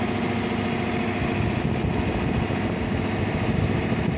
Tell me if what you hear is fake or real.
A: real